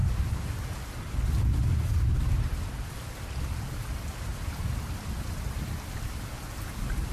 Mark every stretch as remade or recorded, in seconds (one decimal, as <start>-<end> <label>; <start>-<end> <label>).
0.0-7.1 recorded